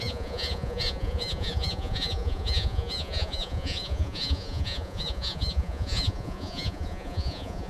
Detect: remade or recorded remade